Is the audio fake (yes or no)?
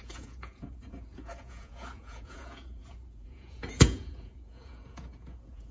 yes